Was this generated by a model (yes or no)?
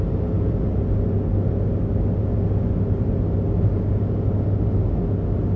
no